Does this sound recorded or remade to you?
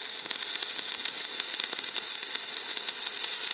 recorded